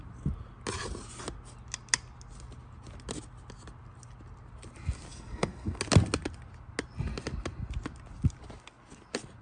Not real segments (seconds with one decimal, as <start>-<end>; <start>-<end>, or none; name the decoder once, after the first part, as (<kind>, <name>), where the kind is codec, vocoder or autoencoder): 5.1-5.8 (codec, SNAC)